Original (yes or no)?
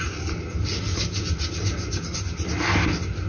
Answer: yes